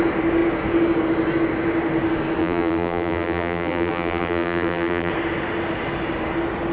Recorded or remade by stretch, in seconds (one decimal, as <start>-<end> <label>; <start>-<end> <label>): 0.0-2.4 recorded; 2.4-5.1 remade; 5.1-6.7 recorded